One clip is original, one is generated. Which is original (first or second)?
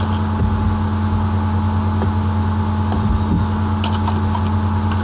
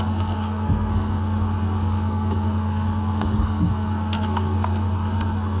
first